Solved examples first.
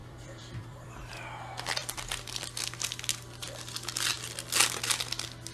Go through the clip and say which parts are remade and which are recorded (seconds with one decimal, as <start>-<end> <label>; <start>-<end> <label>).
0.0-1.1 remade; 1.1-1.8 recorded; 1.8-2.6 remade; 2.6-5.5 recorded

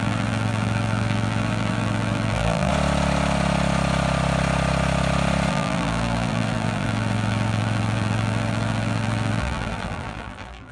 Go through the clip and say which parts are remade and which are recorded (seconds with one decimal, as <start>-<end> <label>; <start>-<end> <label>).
0.0-2.7 remade; 2.7-5.5 recorded; 5.5-10.7 remade

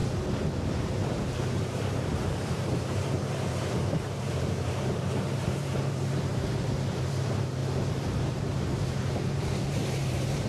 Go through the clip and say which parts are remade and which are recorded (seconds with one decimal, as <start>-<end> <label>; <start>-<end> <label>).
0.0-0.7 recorded; 0.7-7.6 remade; 7.6-8.2 recorded; 8.2-10.5 remade

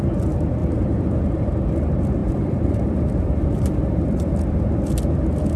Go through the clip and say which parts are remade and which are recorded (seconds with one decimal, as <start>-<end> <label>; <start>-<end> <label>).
0.0-0.6 recorded; 0.6-1.5 remade; 1.5-2.2 recorded; 2.2-4.3 remade; 4.3-5.6 recorded

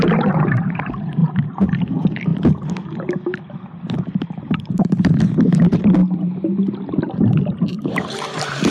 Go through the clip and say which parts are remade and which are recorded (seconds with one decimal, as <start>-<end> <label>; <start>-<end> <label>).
0.0-2.3 remade; 2.3-4.4 recorded; 4.4-6.0 remade; 6.0-7.4 recorded; 7.4-8.7 remade

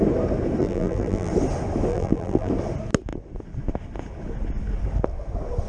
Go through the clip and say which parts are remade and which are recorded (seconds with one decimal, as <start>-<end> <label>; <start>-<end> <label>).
0.0-0.6 recorded; 0.6-1.3 remade; 1.3-1.9 recorded; 1.9-2.5 remade; 2.5-5.7 recorded

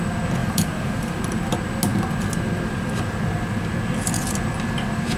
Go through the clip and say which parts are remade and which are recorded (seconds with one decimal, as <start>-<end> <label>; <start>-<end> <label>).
0.0-0.4 recorded; 0.4-1.2 remade; 1.2-5.2 recorded

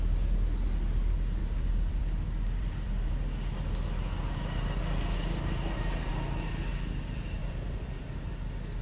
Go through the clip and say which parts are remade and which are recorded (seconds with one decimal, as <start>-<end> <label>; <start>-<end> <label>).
0.0-1.4 recorded; 1.4-3.1 remade; 3.1-7.4 recorded; 7.4-8.0 remade; 8.0-8.8 recorded